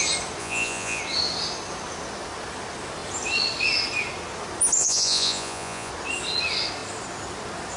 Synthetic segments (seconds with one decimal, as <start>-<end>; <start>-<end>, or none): 0.4-1.0; 4.8-5.9